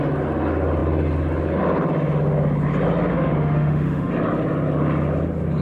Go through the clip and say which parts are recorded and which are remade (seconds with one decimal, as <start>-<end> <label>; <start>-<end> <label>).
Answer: 0.0-3.1 recorded; 3.1-4.1 remade; 4.1-5.6 recorded